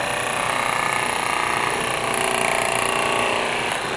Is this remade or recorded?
recorded